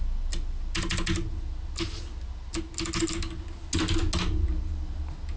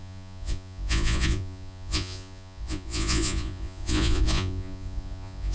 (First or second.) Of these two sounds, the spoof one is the second